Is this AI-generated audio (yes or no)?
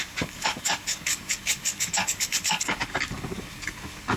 yes